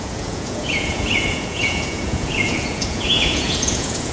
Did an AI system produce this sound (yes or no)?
yes